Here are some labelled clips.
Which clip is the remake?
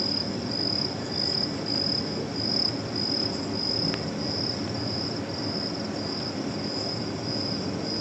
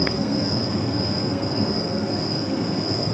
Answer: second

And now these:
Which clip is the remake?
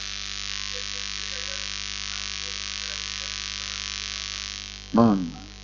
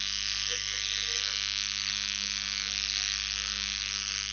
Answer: second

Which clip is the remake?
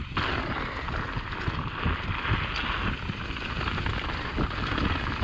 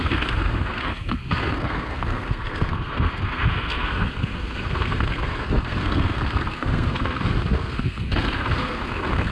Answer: second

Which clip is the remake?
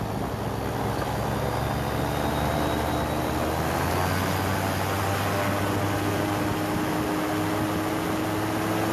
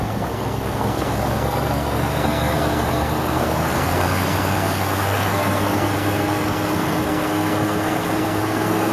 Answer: second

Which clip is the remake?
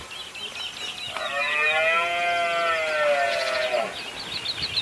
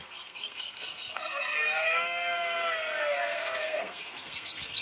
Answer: second